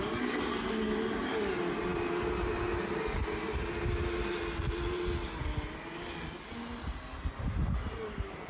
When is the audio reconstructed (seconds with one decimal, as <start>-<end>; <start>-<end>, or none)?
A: none